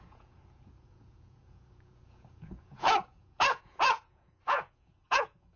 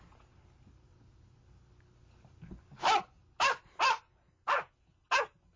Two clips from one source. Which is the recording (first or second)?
second